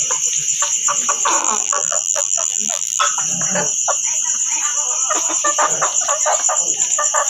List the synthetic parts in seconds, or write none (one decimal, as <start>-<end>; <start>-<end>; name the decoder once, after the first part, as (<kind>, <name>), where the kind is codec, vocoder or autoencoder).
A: 1.4-3.0 (vocoder, BigVGAN v2)